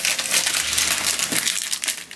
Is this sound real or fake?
real